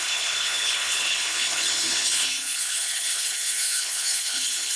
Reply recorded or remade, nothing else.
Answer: remade